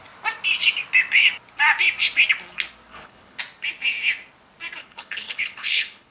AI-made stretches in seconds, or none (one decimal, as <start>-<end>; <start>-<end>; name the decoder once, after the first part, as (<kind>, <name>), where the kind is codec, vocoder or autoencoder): 2.9-3.4 (codec, HILCodec); 4.8-6.1